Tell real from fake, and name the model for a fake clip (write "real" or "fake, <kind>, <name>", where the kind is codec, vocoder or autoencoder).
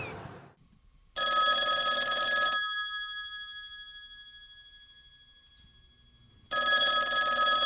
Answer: real